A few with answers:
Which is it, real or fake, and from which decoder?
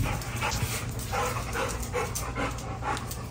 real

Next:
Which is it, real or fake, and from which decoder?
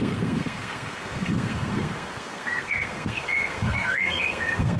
fake, codec, SNAC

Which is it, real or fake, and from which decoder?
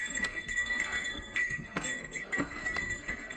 fake, codec, SNAC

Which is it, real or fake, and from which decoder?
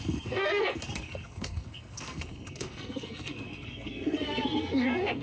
fake, codec, SNAC